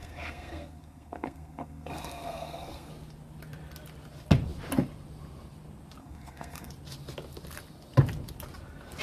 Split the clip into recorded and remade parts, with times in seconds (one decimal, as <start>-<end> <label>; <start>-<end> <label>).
0.0-2.9 remade; 2.9-6.0 recorded; 6.0-6.7 remade; 6.7-9.0 recorded